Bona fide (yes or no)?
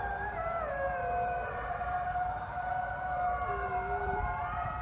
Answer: no